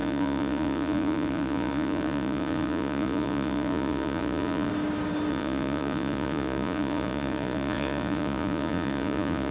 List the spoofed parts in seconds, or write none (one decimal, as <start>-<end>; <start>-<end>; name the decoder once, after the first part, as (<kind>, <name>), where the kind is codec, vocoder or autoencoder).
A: 0.0-4.7 (vocoder, Vocos); 5.3-9.5